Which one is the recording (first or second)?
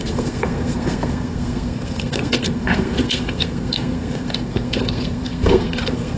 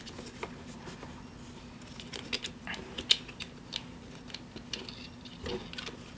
second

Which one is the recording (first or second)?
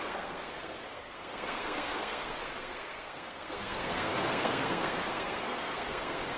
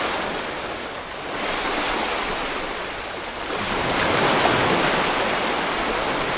second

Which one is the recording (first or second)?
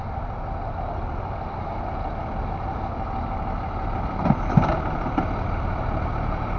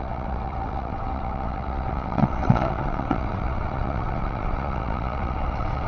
first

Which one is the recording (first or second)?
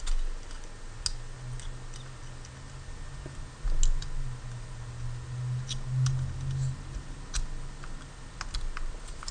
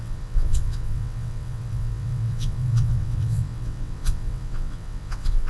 first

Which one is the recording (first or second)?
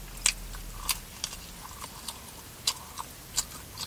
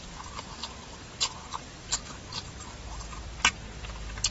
first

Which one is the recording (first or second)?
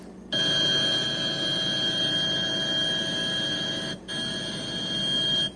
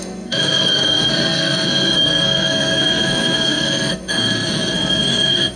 first